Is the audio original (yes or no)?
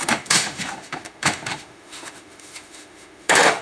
no